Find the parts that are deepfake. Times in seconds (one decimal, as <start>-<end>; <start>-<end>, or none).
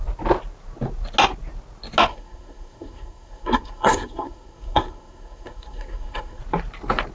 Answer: 2.1-6.4